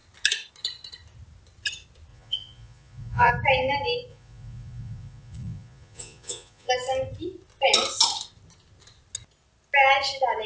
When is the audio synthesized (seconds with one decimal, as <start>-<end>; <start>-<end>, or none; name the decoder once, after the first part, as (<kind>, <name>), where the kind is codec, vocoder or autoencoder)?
2.1-3.3 (vocoder, Vocos); 4.1-6.7